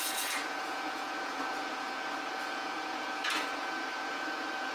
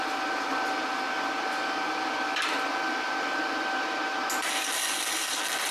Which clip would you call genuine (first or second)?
second